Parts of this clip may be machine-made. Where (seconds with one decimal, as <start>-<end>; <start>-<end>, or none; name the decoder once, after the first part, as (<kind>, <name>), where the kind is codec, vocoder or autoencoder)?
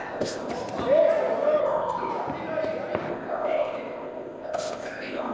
0.0-0.5 (codec, ZipCodec); 1.6-2.1; 3.1-5.3